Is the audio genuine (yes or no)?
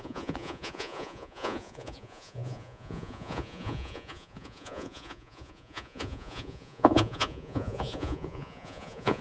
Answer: no